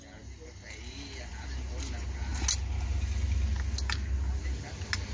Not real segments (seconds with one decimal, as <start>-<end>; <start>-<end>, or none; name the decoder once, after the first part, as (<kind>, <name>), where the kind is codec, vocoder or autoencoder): none